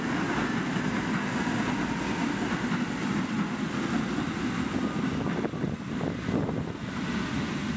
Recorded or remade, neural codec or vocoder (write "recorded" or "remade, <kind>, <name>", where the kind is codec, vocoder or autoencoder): recorded